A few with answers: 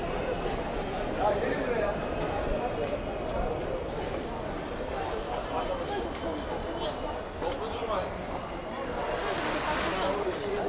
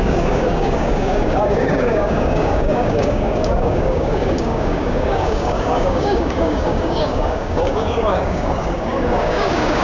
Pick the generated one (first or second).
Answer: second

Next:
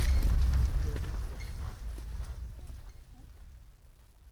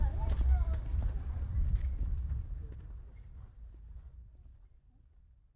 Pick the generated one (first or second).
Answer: second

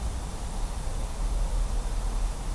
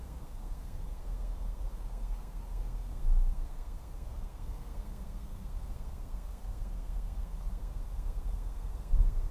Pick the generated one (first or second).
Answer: second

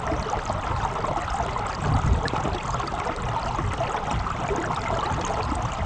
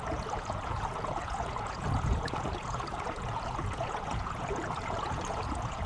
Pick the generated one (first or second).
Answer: second